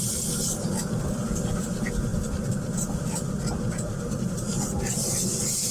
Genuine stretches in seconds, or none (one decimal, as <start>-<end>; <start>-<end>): 0.0-5.7